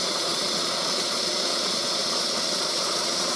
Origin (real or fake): fake